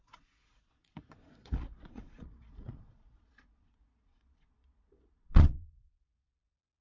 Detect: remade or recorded remade